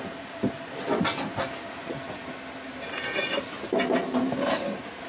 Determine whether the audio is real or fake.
real